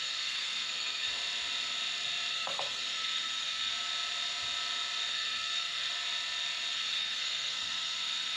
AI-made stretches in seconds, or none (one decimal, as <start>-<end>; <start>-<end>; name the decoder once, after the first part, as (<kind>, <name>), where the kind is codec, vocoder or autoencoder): 0.0-1.1 (codec, SNAC); 2.3-3.7; 5.1-5.9; 6.7-8.4